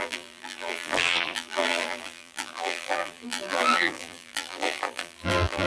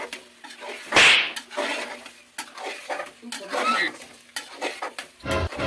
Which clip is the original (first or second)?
second